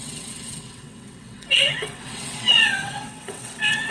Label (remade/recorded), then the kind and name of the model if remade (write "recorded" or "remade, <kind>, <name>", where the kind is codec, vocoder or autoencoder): remade, vocoder, WaveNeXt